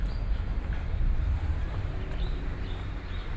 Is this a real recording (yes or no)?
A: no